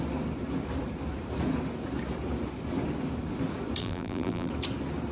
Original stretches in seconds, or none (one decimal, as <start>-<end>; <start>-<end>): 0.0-3.8; 4.5-5.1